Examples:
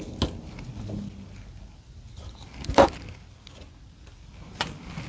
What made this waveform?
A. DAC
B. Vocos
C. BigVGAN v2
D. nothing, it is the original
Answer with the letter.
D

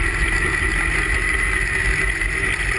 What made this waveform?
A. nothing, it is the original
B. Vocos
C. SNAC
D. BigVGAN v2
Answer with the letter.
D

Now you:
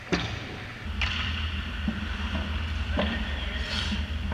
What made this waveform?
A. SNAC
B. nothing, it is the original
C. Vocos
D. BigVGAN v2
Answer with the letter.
D